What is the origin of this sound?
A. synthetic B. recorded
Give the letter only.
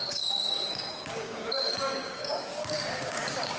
A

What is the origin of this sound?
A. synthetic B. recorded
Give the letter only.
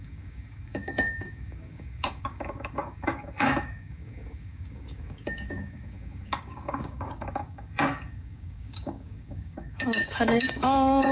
A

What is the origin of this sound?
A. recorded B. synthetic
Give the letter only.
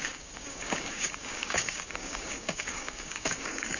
B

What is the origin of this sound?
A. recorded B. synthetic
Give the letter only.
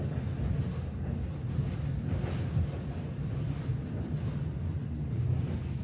A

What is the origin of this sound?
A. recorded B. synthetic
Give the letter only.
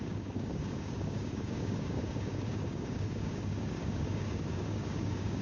B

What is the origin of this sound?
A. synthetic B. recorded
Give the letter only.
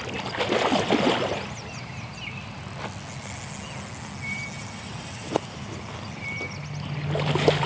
B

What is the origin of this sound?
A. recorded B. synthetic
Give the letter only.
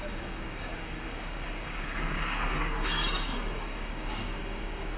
B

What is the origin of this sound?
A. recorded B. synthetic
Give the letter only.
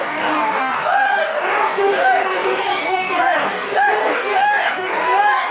B